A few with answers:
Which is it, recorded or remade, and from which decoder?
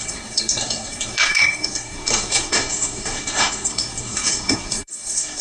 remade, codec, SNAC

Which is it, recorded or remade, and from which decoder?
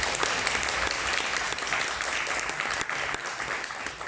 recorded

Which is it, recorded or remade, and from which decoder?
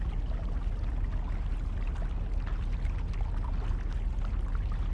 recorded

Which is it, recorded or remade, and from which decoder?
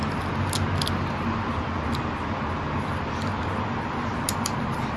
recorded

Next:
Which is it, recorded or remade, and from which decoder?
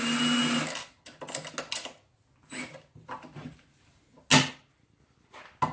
recorded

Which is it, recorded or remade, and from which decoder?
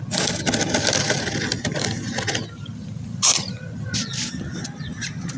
recorded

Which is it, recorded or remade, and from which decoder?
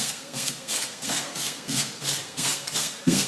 remade, codec, SNAC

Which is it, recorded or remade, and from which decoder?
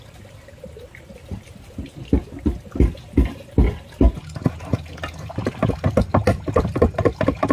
recorded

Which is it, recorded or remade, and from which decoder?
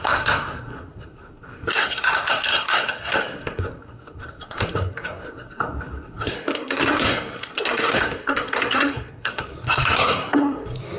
remade, codec, SNAC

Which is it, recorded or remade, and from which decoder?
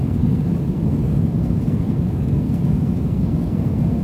remade, codec, SNAC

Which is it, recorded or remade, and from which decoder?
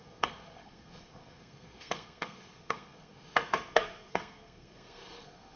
remade, codec, SNAC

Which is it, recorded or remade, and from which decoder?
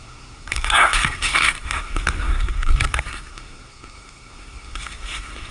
remade, codec, SNAC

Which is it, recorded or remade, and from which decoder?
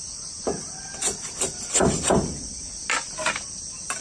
recorded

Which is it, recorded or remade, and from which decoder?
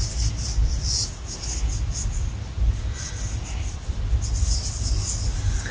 recorded